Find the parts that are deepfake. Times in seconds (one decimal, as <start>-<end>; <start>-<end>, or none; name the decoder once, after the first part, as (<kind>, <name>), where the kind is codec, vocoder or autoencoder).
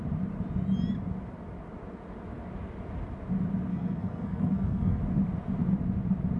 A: 3.7-5.0 (codec, SNAC)